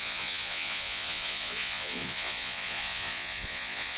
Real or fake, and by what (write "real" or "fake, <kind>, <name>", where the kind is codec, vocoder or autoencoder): fake, vocoder, Vocos